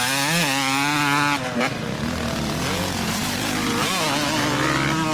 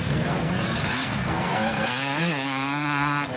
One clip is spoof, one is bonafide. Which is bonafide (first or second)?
first